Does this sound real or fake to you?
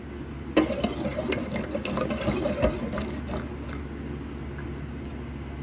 real